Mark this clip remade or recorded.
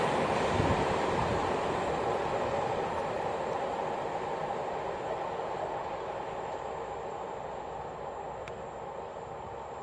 recorded